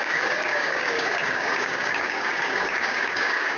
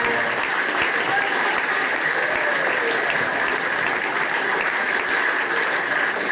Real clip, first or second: second